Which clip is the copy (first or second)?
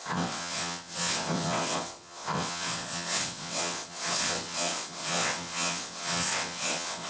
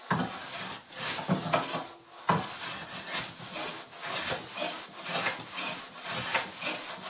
first